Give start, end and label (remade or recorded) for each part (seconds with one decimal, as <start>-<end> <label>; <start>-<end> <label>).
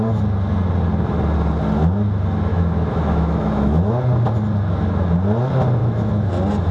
0.0-2.5 recorded; 2.5-3.9 remade; 3.9-5.8 recorded; 5.8-6.3 remade; 6.3-6.7 recorded